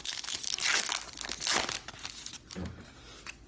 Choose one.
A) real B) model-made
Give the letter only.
A